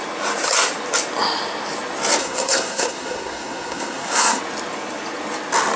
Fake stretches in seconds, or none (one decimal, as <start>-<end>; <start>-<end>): 2.2-4.4